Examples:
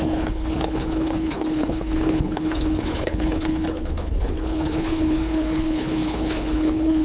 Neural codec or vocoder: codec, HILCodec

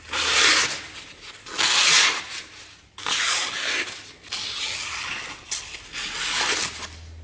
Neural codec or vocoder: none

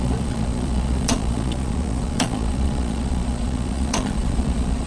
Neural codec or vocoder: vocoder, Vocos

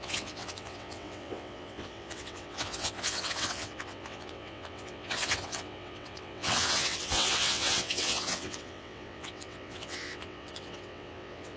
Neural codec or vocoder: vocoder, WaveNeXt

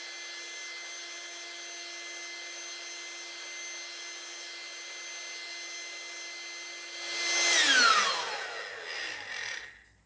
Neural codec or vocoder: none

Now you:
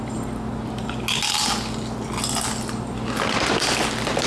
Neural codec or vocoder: none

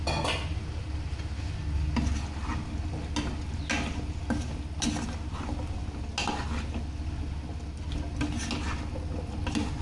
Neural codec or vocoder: none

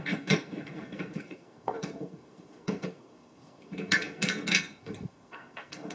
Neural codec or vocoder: codec, SNAC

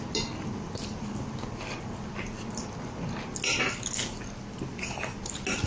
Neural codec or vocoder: none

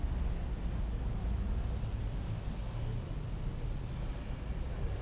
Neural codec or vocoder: none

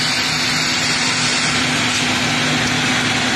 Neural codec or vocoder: none